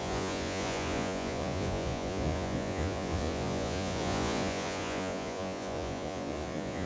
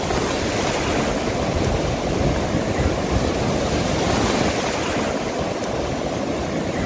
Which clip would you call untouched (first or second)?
second